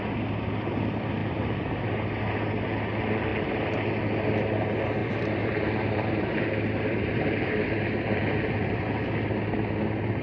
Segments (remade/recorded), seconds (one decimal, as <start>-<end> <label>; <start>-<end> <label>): 0.0-1.2 recorded; 1.2-2.2 remade; 2.2-5.0 recorded; 5.0-8.9 remade; 8.9-10.2 recorded